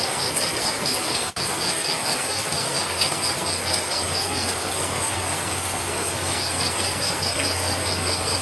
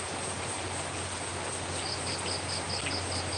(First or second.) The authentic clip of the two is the second